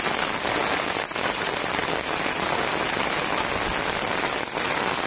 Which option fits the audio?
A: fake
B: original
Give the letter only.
B